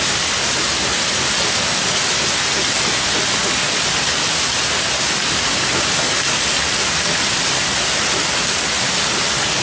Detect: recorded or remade recorded